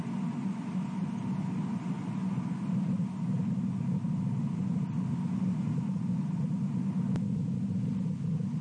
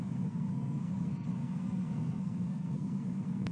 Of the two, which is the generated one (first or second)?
second